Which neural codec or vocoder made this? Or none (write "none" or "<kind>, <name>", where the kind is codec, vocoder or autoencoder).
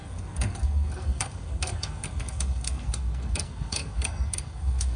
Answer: codec, SNAC